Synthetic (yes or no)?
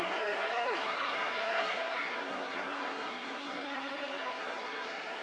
yes